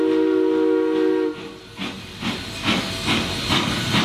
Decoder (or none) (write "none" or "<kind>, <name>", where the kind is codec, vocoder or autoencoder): none